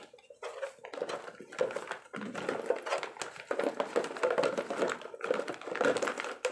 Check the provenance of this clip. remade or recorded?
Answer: recorded